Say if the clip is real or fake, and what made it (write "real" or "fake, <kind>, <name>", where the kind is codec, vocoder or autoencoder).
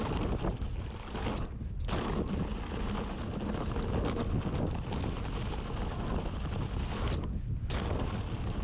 real